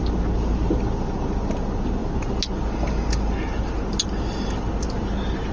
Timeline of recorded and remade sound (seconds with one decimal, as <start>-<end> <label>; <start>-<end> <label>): 0.0-5.5 recorded